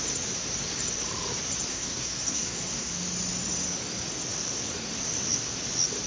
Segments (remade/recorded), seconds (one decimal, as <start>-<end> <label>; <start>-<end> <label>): 0.0-1.7 recorded; 1.7-2.9 remade; 2.9-6.1 recorded